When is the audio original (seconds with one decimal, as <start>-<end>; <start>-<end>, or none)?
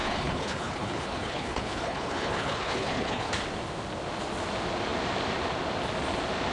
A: 3.3-6.5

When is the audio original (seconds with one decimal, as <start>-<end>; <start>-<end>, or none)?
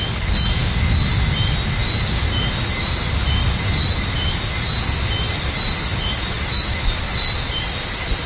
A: 0.0-3.8; 4.4-5.9; 6.9-8.3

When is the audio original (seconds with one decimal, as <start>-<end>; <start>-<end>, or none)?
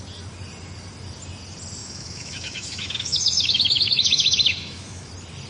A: 0.0-1.8; 5.1-5.5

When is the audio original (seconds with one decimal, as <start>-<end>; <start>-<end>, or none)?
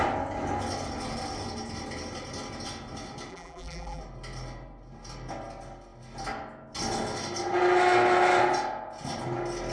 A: 0.0-3.3; 4.0-9.7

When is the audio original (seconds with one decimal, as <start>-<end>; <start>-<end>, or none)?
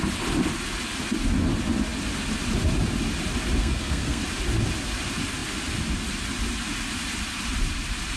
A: 0.0-3.6; 4.2-8.2